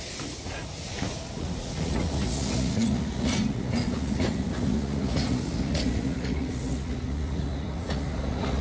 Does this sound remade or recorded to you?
remade